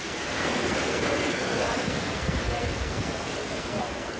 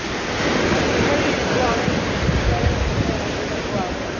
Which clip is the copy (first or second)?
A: first